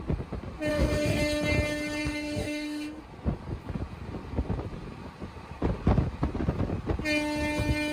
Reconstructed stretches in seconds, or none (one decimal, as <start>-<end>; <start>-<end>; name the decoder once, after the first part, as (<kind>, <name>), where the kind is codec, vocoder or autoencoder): 0.7-1.2 (autoencoder, DAC-VAE); 2.0-3.0